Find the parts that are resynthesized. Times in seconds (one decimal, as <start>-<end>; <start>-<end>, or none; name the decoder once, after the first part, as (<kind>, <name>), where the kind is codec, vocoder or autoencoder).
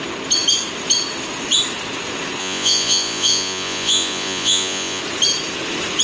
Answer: 2.4-5.0 (vocoder, Vocos)